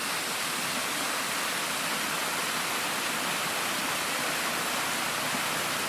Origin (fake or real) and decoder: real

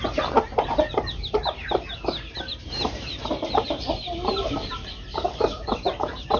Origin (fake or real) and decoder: fake, vocoder, BigVGAN v2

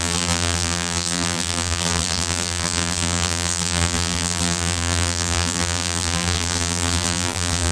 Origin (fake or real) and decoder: fake, vocoder, BigVGAN v2